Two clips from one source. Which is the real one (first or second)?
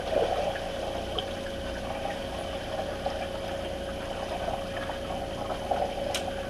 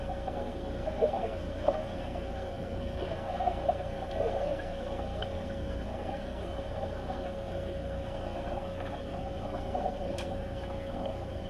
first